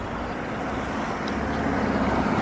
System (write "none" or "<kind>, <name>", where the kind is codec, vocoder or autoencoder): none